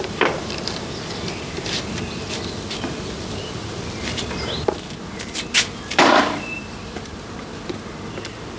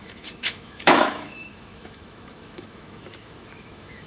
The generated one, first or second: second